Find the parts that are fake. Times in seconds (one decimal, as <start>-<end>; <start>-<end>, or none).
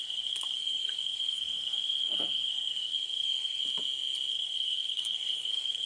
0.0-3.6; 4.3-5.9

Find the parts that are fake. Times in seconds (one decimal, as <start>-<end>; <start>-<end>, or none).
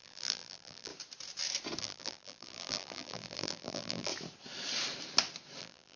0.0-0.9; 1.8-4.1; 5.6-6.0